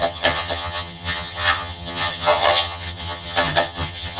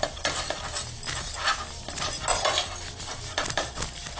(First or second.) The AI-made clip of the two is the first